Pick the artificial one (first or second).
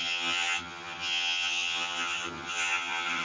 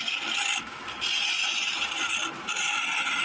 first